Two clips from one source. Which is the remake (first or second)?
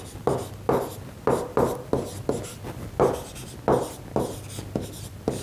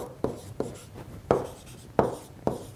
second